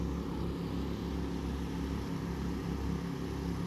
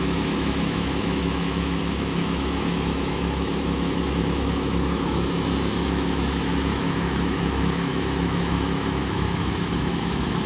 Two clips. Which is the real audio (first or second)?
first